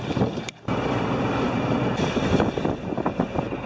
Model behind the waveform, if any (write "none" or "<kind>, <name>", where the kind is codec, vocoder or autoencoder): none